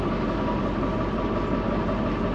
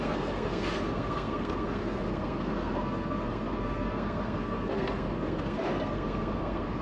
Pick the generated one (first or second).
second